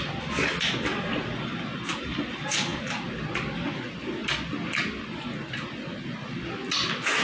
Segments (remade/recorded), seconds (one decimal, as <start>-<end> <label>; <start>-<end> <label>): 0.0-0.9 recorded; 0.9-1.4 remade; 1.4-7.2 recorded